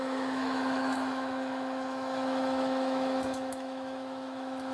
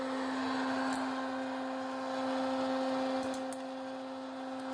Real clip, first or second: second